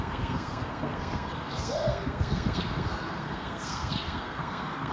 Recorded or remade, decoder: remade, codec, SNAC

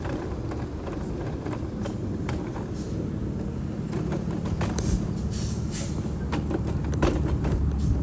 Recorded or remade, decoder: recorded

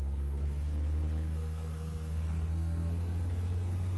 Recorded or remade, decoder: remade, codec, SNAC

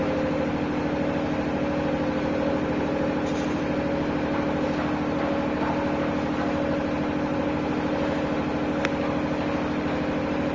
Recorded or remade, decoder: recorded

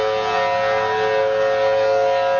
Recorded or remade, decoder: recorded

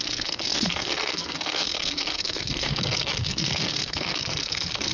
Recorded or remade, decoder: remade, codec, SNAC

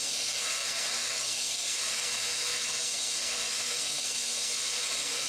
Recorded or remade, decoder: remade, codec, SNAC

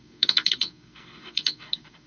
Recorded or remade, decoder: remade, codec, SNAC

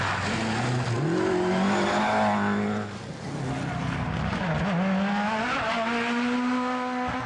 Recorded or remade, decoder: recorded